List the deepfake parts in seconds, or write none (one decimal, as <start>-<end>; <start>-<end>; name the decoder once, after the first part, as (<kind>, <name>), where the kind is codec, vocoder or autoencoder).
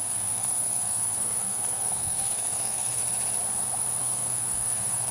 0.0-3.0 (codec, SNAC); 4.0-5.1